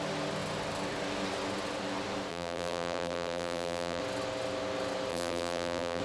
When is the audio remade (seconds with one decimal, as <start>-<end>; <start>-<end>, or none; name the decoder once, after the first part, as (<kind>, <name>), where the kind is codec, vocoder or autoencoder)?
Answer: 2.3-4.0 (vocoder, BigVGAN v2); 5.1-6.0